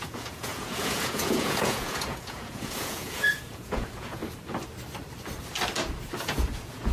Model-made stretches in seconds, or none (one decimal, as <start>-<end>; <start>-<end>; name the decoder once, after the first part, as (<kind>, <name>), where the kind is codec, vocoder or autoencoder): 0.0-4.2 (vocoder, Vocos); 6.2-6.9